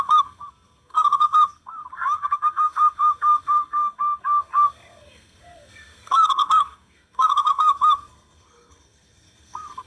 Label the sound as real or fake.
fake